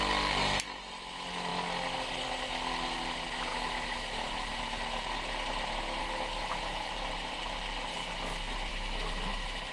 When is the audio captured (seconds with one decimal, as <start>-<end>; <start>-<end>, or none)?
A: 0.0-3.5; 4.6-6.0; 6.9-8.7